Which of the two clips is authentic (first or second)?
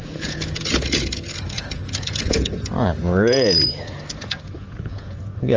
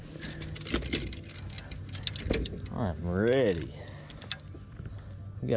second